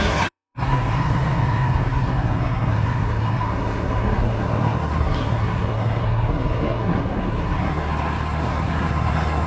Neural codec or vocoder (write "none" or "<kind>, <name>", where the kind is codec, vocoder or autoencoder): codec, SNAC